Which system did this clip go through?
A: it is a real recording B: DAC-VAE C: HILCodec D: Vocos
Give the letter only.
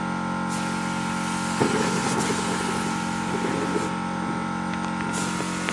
A